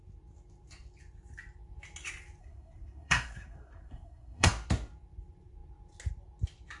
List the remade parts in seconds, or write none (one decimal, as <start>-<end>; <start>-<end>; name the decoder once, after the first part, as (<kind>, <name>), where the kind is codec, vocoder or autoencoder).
2.4-4.5 (codec, SNAC)